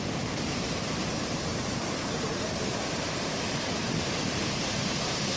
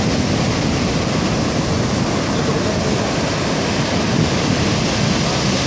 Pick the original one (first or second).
second